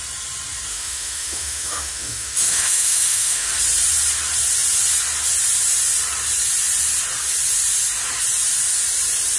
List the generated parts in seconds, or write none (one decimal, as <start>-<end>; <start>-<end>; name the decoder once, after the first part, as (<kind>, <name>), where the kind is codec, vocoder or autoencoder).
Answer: 0.7-3.5 (autoencoder, DAC-VAE)